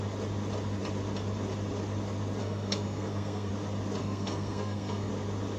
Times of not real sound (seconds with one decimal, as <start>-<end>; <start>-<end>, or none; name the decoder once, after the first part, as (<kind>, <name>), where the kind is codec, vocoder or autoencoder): 2.4-3.5 (codec, SNAC); 4.0-5.1